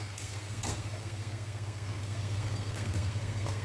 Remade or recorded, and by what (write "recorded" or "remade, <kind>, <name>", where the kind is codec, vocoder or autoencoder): remade, codec, SNAC